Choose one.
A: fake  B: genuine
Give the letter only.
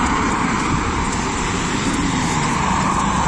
A